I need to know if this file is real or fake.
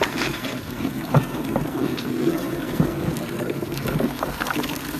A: fake